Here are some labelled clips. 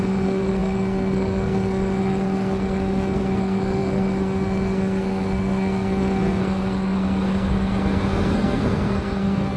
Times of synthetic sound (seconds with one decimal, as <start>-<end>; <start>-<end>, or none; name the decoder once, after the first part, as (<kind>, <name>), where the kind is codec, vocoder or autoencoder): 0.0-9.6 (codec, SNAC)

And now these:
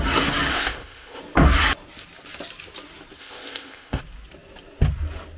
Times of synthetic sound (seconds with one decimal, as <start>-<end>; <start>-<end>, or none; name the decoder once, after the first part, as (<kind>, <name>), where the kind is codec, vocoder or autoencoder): 0.5-1.2 (codec, ZipCodec); 3.2-4.0

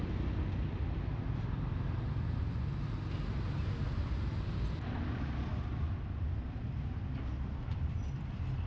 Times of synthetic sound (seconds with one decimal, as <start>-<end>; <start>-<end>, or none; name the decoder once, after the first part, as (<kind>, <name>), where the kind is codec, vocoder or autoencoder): none

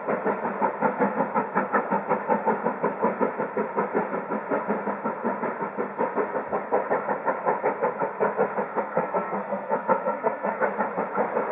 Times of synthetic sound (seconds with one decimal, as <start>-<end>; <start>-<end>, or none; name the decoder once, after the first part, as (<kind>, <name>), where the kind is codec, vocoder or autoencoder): 8.7-10.5 (codec, SNAC)

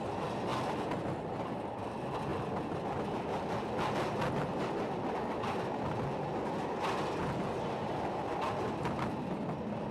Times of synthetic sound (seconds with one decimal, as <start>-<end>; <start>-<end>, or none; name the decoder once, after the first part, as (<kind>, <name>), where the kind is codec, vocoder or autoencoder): none

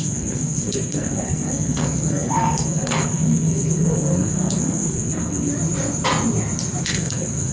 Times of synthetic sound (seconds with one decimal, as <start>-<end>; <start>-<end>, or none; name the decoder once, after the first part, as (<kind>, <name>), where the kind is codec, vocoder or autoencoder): 0.0-5.5 (codec, SNAC); 6.8-7.5